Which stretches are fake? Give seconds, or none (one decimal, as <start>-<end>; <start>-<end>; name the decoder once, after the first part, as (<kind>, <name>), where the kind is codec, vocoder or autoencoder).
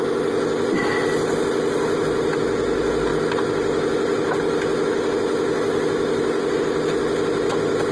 none